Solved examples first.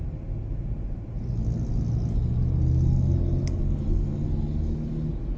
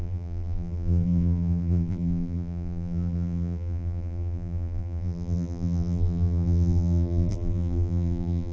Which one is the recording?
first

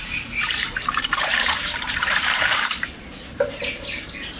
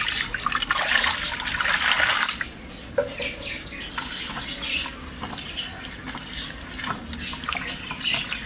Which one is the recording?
second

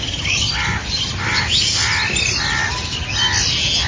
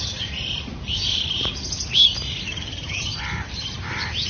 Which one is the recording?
first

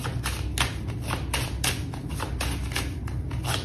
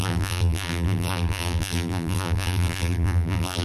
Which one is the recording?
first